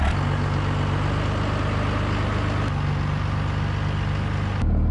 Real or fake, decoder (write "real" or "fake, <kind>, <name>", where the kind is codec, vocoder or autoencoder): real